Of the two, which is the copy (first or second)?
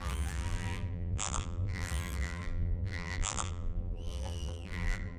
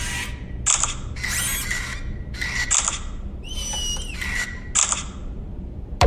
first